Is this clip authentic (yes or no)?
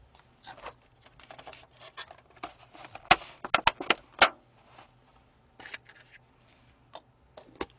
yes